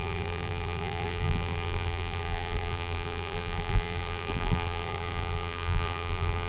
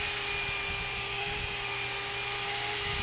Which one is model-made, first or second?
first